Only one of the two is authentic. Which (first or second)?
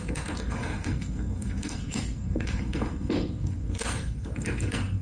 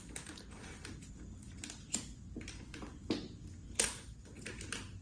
second